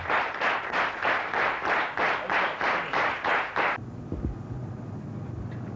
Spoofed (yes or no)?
no